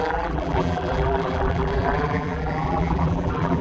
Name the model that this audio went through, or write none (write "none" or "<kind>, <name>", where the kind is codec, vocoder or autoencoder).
vocoder, BigVGAN v2